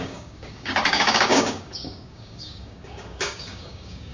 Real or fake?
fake